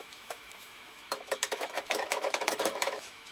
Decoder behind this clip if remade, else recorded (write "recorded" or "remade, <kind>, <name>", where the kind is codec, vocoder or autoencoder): remade, autoencoder, DAC-VAE